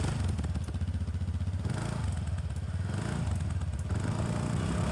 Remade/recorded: recorded